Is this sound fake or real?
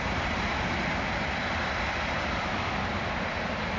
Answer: real